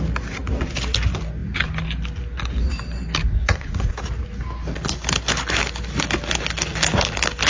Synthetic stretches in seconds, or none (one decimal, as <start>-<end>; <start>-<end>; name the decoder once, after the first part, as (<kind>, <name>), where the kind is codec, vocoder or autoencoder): 3.2-3.9 (vocoder, Vocos)